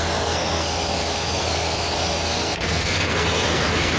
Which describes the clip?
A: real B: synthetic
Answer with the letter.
B